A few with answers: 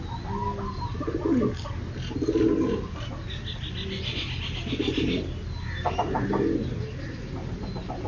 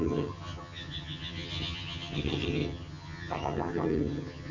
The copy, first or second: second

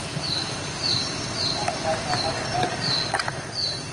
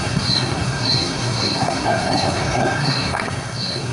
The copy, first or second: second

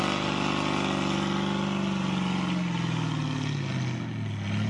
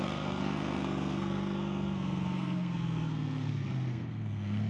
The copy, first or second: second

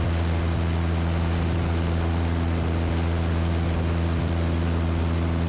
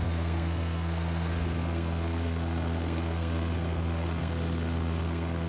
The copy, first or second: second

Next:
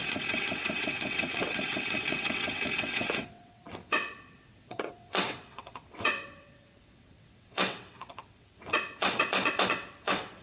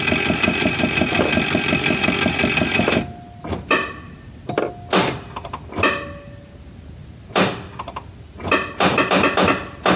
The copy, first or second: first